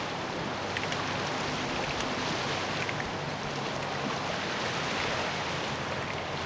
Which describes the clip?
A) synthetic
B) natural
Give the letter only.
B